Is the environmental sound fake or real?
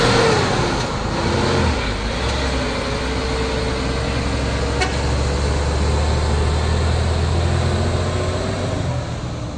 real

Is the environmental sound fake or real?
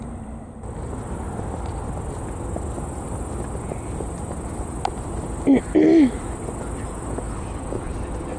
real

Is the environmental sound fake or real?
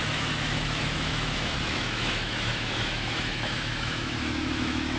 fake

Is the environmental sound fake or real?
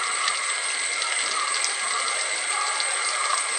real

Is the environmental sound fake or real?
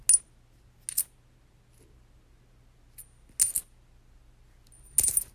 real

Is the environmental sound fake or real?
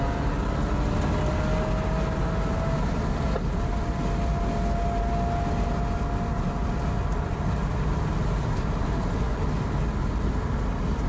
real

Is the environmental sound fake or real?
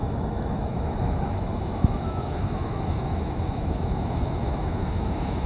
fake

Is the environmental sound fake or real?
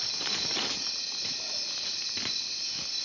real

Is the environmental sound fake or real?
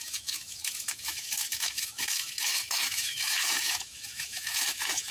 fake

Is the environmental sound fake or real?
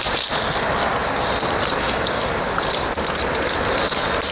real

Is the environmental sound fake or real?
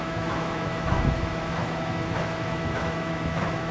fake